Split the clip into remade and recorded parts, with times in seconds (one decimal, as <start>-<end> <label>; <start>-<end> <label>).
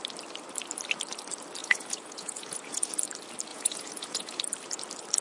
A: 0.0-1.6 recorded; 1.6-2.9 remade; 2.9-3.5 recorded; 3.5-4.4 remade; 4.4-5.2 recorded